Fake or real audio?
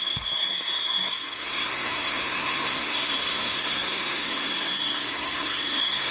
fake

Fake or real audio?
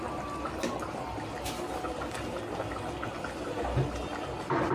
real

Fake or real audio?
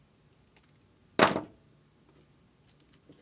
real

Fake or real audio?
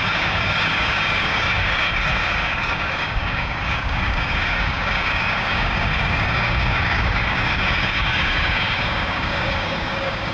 fake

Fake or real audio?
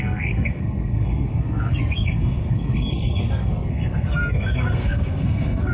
fake